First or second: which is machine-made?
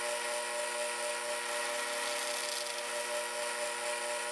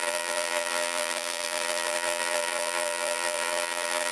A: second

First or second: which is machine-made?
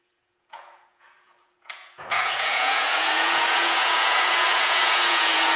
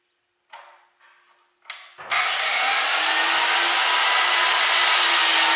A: first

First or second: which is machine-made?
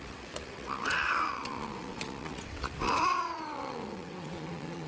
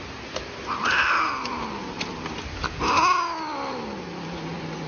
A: first